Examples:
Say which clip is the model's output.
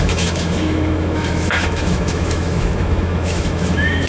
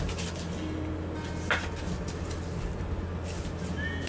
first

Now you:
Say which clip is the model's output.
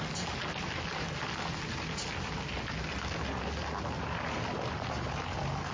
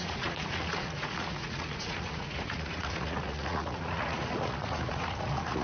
second